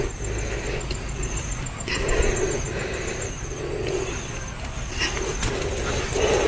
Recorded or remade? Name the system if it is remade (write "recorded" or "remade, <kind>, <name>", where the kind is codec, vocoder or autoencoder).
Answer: recorded